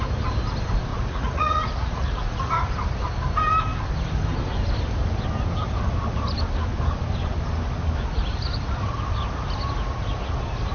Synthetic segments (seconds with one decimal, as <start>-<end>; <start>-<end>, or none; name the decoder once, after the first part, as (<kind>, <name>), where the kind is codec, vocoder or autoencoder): 0.9-2.5 (vocoder, Vocos)